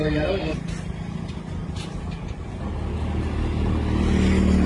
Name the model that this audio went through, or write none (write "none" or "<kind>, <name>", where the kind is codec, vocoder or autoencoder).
none